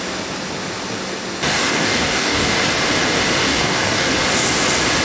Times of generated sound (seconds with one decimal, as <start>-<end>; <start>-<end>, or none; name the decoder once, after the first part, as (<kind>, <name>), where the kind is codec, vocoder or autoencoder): 1.5-2.5 (codec, DAC); 3.4-4.1